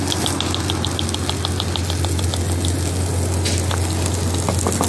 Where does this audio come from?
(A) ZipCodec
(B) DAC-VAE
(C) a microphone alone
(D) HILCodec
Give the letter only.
C